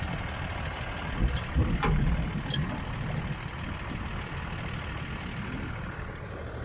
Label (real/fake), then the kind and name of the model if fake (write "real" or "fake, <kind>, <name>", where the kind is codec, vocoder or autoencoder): real